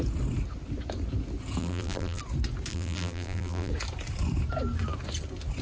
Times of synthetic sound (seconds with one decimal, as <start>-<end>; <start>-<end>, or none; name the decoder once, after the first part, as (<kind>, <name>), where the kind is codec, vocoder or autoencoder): 1.6-2.2 (vocoder, BigVGAN v2); 2.7-3.7